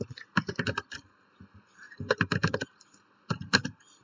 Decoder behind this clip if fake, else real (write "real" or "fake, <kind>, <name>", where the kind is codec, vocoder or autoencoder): fake, vocoder, BigVGAN v2